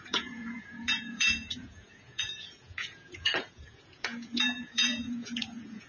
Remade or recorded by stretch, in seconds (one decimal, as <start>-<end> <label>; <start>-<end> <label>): 0.0-5.9 remade